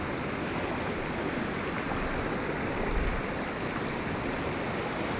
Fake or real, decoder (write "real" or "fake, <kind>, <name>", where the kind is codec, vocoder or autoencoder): real